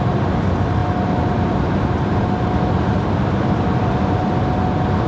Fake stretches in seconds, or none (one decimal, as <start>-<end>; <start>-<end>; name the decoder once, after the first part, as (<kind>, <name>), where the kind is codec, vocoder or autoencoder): none